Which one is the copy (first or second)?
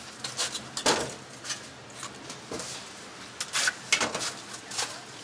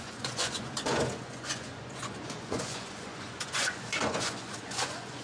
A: second